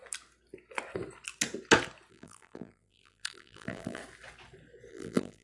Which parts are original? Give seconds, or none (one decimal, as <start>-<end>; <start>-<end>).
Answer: 0.0-2.1; 4.0-4.9